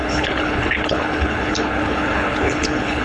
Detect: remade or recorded remade